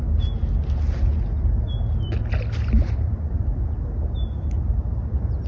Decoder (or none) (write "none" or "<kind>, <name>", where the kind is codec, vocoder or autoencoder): none